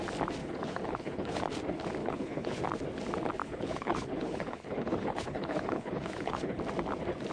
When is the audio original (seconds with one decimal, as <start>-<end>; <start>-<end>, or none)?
0.0-0.4; 1.4-2.0; 2.6-3.4; 6.6-7.3